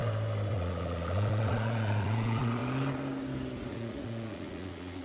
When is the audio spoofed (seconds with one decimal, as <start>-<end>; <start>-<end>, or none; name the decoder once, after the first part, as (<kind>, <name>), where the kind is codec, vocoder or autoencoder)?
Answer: 0.5-2.6 (vocoder, Vocos); 3.7-5.0